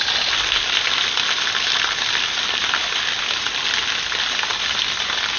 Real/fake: real